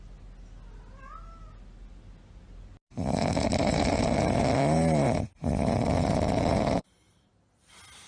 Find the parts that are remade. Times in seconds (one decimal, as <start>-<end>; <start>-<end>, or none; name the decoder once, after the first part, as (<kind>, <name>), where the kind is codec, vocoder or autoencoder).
3.5-7.3 (vocoder, BigVGAN v2)